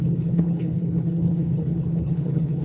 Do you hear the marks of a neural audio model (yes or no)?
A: yes